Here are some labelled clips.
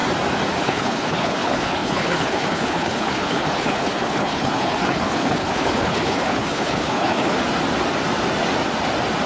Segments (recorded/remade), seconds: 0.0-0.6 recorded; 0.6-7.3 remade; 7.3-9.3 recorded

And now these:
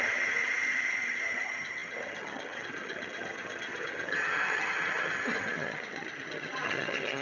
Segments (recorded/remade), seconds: 0.0-7.2 remade

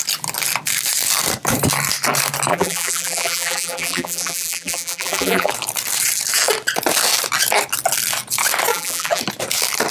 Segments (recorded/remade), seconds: 0.0-2.5 recorded; 2.5-5.5 remade; 5.5-8.7 recorded; 8.7-9.2 remade; 9.2-9.9 recorded

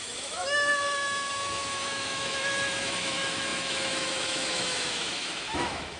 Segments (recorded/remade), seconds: 0.0-6.0 remade

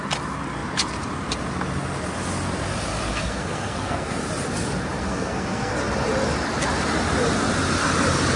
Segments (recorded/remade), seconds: 0.0-3.1 recorded; 3.1-4.2 remade; 4.2-5.0 recorded; 5.0-5.7 remade; 5.7-8.4 recorded